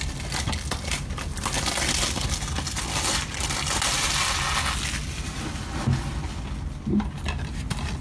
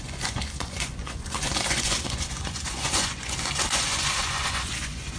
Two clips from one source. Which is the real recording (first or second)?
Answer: first